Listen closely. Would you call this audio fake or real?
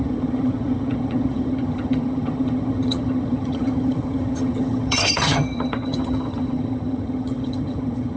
fake